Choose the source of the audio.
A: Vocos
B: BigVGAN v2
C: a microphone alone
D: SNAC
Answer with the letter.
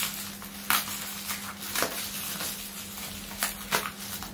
C